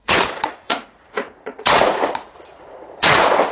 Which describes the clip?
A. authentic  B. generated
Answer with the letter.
B